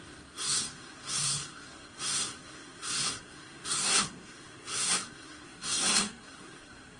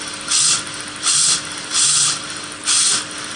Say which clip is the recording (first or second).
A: second